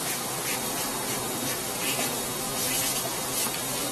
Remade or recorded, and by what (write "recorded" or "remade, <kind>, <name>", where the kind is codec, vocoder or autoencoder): recorded